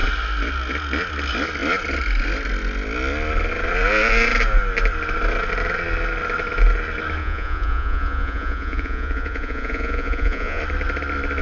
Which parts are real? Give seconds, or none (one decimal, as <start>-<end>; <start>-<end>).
0.0-7.2; 10.6-11.4